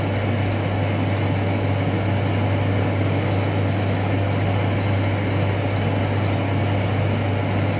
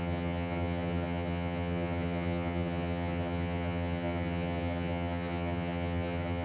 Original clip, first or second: first